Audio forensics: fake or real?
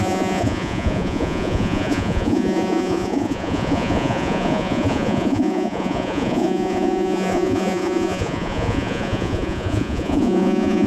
fake